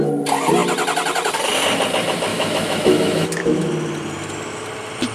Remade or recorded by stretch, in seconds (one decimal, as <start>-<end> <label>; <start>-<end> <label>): 0.0-2.3 recorded; 2.3-3.7 remade; 3.7-5.1 recorded